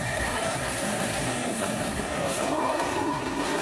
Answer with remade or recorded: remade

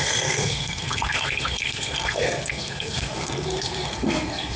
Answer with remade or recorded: remade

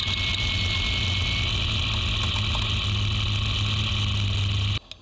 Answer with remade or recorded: recorded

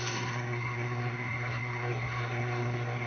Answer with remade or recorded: remade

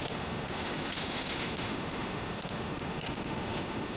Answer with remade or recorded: remade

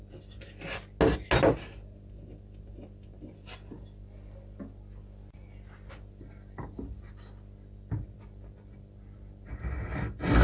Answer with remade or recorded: recorded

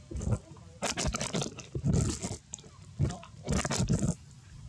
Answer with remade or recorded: recorded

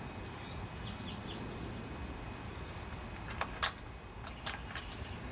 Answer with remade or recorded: recorded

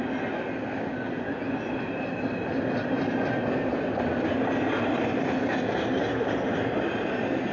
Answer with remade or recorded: recorded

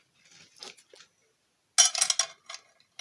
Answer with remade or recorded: recorded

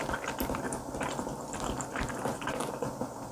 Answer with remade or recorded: recorded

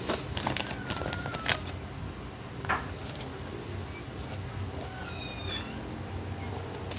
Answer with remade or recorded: recorded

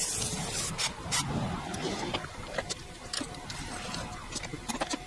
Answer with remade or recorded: remade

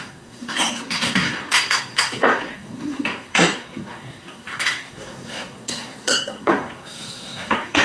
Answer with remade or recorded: remade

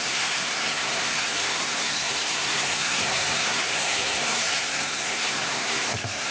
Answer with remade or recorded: remade